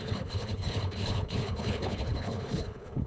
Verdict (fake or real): fake